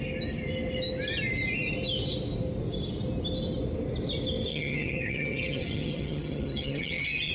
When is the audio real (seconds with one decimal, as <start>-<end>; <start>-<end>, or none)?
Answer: 0.0-4.5